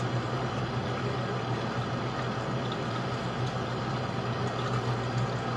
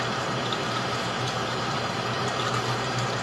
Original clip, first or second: first